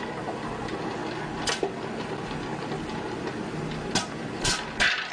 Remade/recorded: recorded